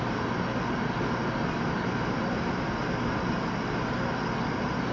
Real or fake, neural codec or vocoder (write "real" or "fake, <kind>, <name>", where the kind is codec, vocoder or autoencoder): real